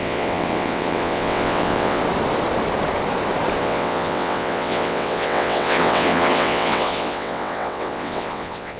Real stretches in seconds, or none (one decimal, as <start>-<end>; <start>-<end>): 2.0-3.6